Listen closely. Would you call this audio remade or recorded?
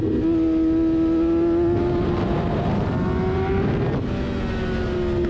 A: recorded